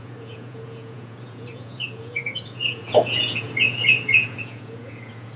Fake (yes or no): yes